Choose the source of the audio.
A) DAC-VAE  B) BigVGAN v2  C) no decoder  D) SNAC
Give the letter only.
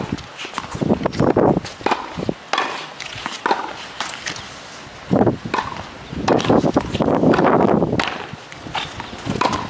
C